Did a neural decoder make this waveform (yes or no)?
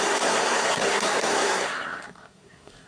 yes